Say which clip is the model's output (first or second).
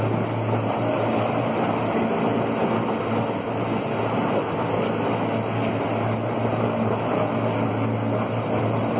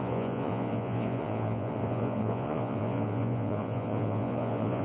second